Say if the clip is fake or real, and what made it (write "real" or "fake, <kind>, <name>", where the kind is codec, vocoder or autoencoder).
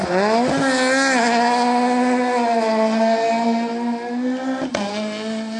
real